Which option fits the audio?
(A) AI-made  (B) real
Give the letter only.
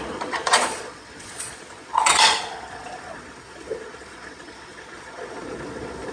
A